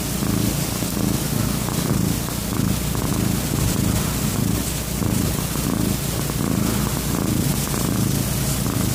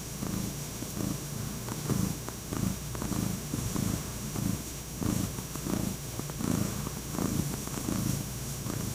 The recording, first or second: first